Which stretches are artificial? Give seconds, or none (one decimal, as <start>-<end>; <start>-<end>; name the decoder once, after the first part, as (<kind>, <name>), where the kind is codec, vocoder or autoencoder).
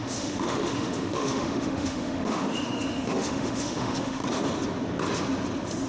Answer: 0.0-4.2 (autoencoder, DAC-VAE)